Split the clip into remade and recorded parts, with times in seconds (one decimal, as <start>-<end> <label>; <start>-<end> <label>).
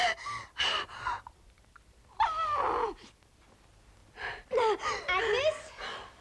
0.0-3.4 remade; 3.4-4.0 recorded; 4.0-5.0 remade; 5.0-5.4 recorded; 5.4-6.2 remade